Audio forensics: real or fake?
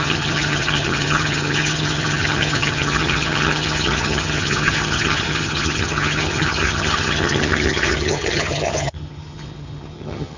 fake